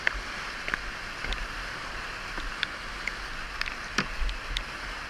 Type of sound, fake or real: real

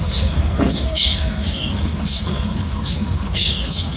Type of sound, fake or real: fake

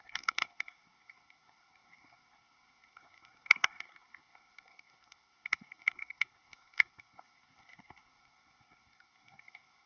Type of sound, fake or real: fake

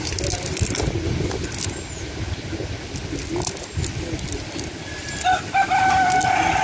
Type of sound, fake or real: real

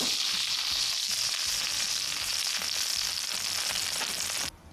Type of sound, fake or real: real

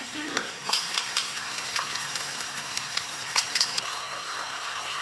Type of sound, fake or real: fake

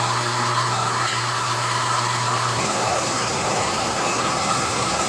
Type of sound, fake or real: fake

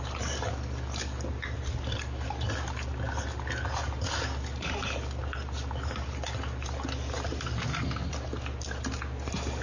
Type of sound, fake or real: real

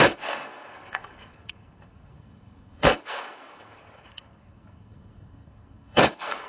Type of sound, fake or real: fake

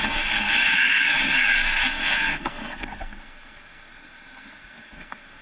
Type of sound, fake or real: fake